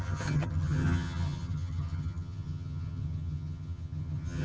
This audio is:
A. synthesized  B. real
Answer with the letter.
A